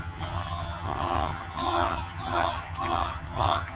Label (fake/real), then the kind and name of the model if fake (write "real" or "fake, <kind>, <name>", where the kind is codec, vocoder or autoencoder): fake, vocoder, HiFi-GAN